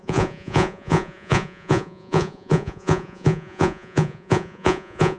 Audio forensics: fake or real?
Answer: fake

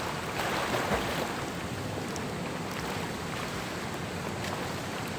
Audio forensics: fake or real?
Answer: real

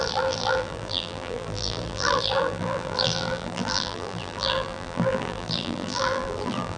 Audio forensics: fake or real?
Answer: fake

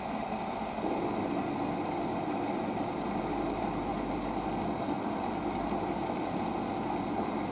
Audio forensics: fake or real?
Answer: real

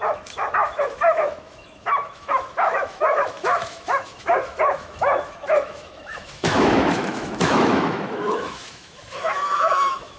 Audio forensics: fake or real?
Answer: fake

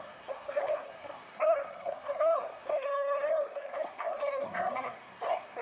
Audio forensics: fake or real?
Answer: fake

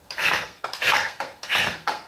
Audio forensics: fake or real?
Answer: fake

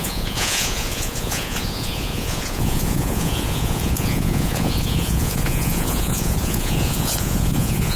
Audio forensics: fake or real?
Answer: fake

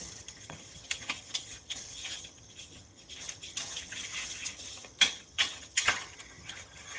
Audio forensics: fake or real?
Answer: fake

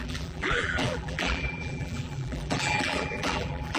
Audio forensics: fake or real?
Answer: fake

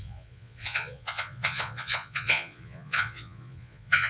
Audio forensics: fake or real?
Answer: fake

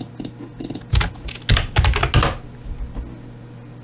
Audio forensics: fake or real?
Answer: real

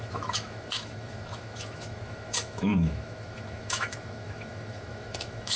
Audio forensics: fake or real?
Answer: fake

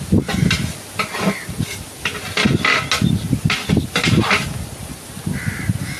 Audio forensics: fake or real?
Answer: real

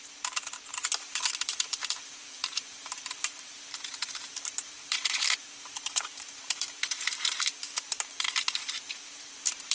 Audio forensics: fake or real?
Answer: fake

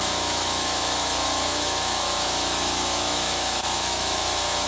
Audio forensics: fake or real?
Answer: fake